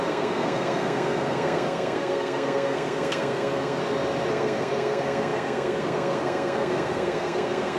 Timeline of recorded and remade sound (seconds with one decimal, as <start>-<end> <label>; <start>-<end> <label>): 0.0-3.8 remade; 3.8-4.3 recorded; 4.3-7.8 remade